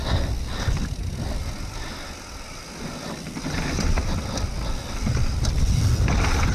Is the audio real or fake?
real